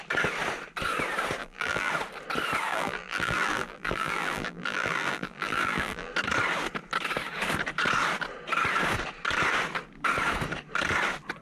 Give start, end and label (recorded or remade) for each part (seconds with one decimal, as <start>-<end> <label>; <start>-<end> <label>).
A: 0.0-1.4 recorded; 1.4-1.9 remade; 1.9-2.7 recorded; 2.7-6.1 remade; 6.1-11.4 recorded